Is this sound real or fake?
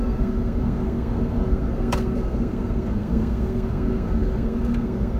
fake